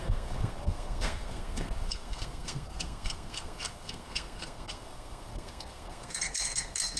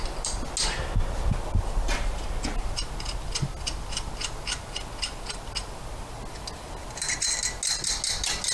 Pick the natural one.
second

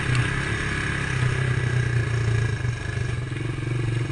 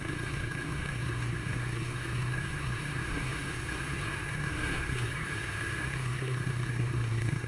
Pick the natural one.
first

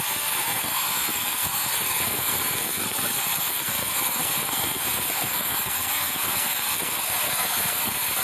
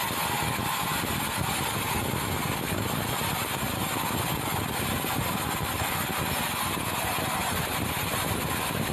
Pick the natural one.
second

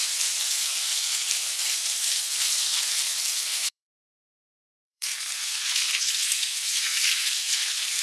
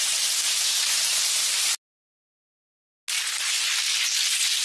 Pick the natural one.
second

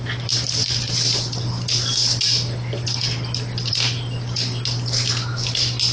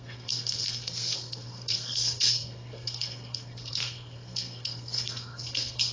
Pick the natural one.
first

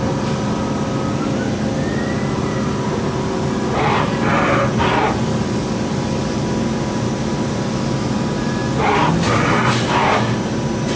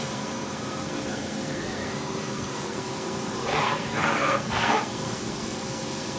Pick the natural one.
first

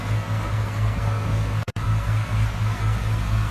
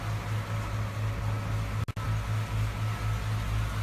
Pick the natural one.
second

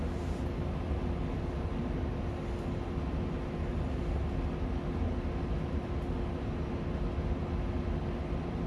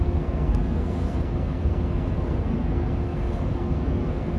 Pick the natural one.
first